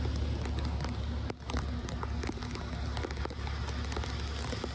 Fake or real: real